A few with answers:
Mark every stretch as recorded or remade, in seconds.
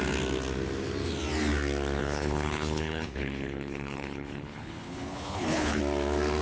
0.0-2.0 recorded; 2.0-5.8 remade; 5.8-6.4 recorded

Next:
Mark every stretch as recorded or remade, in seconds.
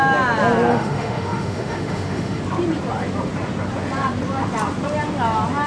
0.0-0.7 recorded; 0.7-2.4 remade; 2.4-5.7 recorded